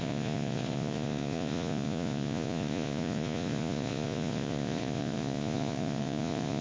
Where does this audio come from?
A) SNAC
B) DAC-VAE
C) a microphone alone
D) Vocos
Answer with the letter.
D